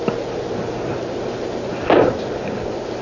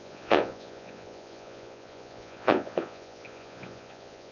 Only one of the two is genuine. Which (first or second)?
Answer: first